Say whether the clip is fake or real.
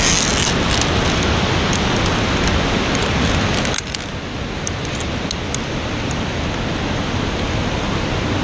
real